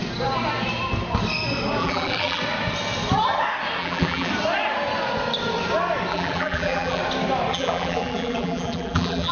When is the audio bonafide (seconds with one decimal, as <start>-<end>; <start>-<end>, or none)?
0.0-1.8; 2.4-3.8; 4.3-6.1; 7.0-7.5